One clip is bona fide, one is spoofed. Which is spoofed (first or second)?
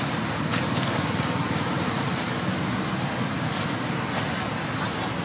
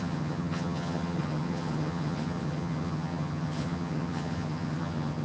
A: second